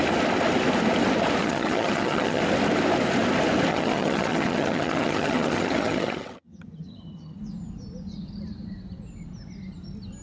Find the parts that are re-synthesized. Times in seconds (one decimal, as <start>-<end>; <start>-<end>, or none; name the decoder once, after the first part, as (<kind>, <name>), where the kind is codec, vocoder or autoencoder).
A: 1.4-2.4 (vocoder, HiFi-GAN); 3.7-7.4